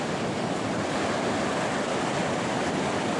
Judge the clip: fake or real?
real